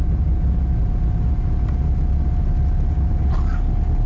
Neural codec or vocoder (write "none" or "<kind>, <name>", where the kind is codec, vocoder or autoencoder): none